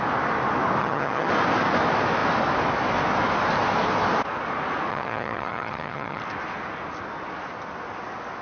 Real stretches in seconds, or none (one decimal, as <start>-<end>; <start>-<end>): 0.0-0.8; 1.3-4.9; 6.2-8.4